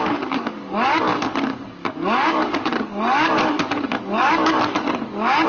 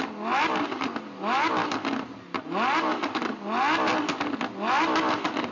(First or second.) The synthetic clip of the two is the first